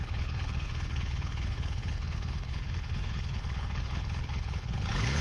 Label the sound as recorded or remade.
remade